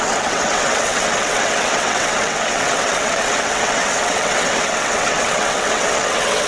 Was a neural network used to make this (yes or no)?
yes